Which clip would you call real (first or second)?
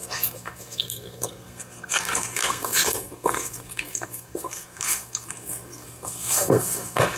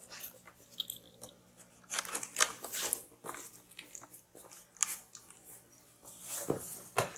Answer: second